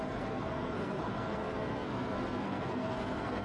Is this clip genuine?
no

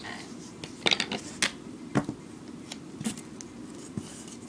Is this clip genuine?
yes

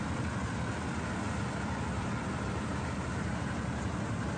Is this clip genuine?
yes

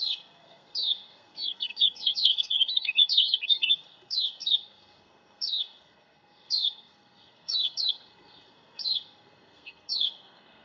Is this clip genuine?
no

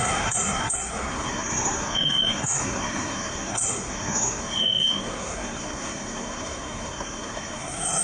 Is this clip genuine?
no